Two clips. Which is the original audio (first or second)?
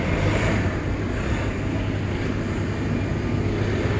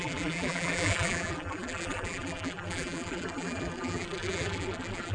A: first